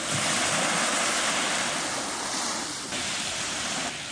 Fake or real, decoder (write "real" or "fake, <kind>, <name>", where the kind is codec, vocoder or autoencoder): real